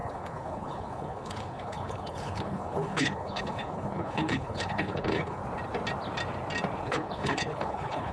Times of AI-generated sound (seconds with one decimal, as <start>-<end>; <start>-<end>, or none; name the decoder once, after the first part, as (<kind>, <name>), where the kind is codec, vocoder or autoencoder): 0.0-5.4 (codec, HILCodec); 6.8-8.1